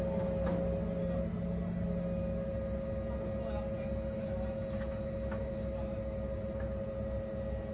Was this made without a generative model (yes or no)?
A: yes